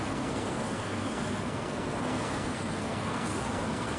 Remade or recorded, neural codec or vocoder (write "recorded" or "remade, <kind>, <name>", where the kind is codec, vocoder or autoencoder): remade, codec, SNAC